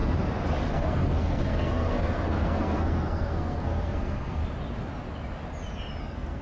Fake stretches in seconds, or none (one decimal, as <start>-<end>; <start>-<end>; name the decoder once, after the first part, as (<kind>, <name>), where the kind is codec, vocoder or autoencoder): 0.7-4.4 (codec, SNAC); 6.0-6.4